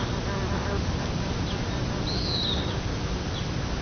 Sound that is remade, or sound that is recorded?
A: recorded